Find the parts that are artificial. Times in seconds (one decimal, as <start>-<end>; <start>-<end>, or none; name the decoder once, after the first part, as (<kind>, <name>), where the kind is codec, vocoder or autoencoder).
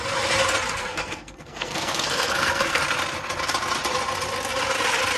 0.8-2.8 (codec, SNAC)